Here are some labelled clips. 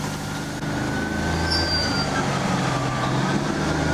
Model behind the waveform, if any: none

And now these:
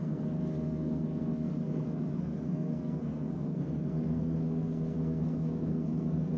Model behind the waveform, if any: codec, SNAC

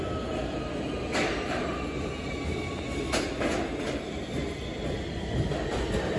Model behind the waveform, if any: none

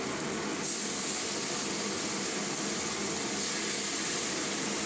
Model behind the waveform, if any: none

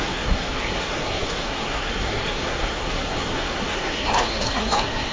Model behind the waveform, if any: codec, SNAC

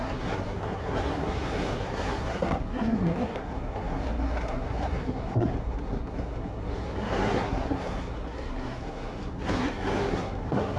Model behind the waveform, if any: codec, SNAC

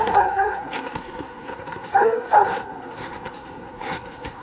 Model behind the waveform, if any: codec, SNAC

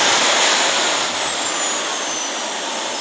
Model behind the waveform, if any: none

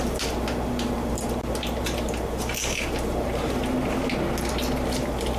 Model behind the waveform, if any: none